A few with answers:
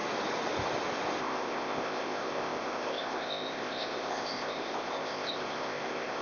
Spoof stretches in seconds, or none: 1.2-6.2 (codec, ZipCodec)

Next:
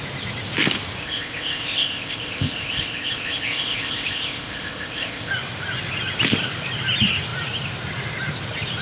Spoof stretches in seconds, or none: 1.0-5.3 (codec, ZipCodec)

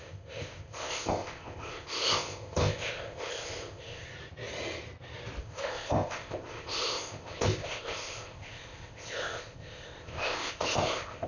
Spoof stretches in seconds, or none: 0.0-4.1 (codec, ZipCodec); 5.4-11.3

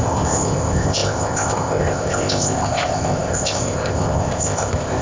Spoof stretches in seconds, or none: 0.0-5.0 (codec, ZipCodec)

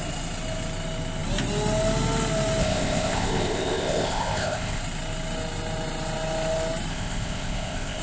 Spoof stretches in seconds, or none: 2.6-4.8 (codec, ZipCodec); 6.9-8.0